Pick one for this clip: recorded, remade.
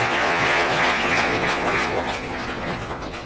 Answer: remade